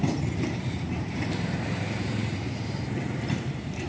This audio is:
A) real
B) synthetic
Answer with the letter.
B